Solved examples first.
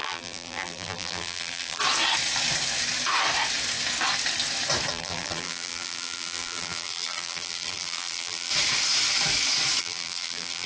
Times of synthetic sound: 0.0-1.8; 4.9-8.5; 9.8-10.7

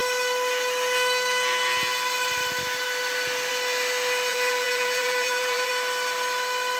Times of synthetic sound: 4.3-5.7

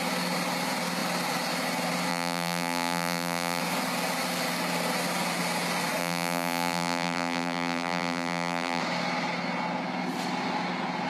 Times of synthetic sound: 2.1-3.6; 6.0-8.8